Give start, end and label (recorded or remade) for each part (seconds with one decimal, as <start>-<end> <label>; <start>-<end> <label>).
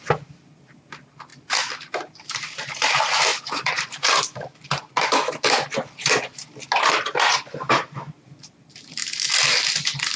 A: 0.0-1.3 recorded; 1.3-2.1 remade; 2.1-3.3 recorded; 3.3-3.9 remade; 3.9-10.2 recorded